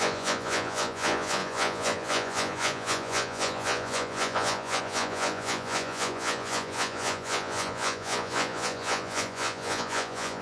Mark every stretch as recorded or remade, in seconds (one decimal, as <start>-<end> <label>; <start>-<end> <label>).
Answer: 0.0-10.4 remade